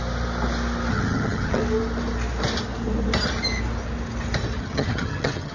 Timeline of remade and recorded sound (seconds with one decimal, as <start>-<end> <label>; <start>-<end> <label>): 0.0-0.9 recorded; 0.9-1.6 remade; 1.6-4.6 recorded; 4.6-5.5 remade